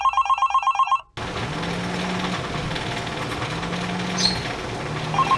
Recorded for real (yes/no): yes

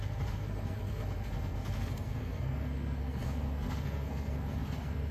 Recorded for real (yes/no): no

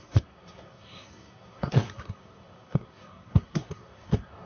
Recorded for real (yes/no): no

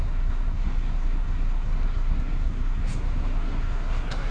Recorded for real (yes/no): no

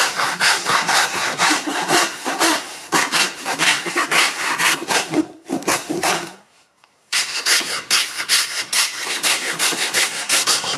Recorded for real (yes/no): no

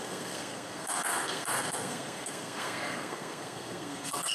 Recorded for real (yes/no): no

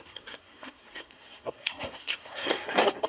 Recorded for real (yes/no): no